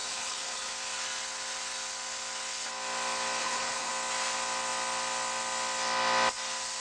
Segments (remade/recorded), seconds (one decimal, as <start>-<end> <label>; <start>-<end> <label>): 0.0-0.7 remade; 0.7-3.4 recorded; 3.4-3.9 remade; 3.9-6.8 recorded